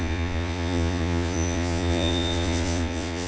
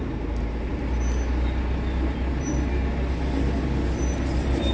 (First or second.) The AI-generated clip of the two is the first